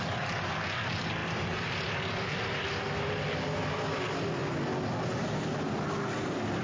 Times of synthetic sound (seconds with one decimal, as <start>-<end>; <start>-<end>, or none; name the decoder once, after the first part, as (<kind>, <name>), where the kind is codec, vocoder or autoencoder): none

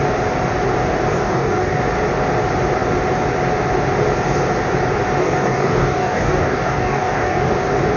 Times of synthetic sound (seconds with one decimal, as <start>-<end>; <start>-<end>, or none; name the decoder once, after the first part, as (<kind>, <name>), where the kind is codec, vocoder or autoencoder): 1.1-1.8 (codec, DAC); 5.2-7.5

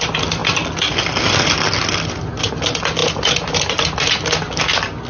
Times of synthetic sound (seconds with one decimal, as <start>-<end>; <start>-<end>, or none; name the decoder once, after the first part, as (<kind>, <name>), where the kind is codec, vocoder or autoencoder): none

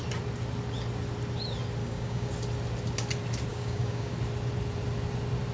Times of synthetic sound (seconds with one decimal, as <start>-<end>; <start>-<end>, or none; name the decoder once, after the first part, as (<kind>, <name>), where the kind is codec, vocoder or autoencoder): 1.8-2.3 (codec, DAC); 3.5-4.1